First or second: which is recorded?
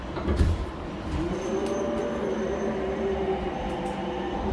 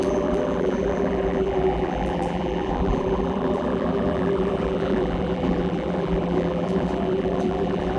first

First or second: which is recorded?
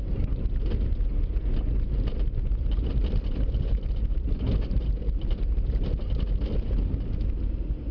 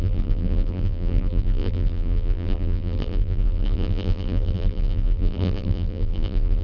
first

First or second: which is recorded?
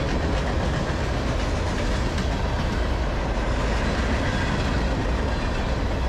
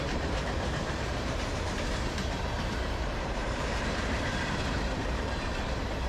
first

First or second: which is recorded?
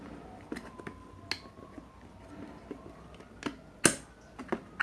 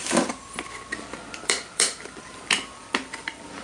first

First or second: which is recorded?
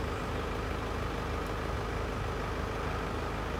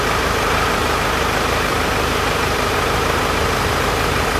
first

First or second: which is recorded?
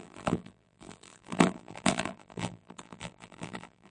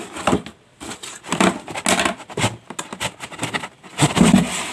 second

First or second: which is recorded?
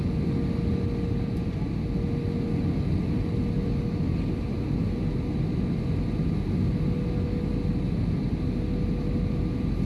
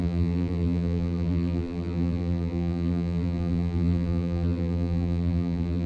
first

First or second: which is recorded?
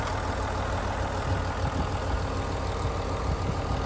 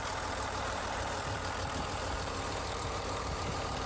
first